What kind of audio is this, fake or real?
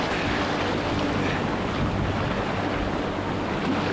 real